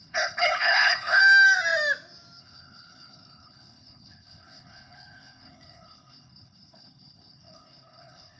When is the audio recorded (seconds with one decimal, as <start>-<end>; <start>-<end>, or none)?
1.2-2.4